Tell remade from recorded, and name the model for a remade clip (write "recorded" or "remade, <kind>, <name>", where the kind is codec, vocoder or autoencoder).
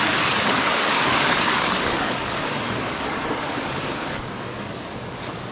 remade, codec, DAC